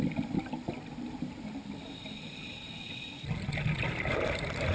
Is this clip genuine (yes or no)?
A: yes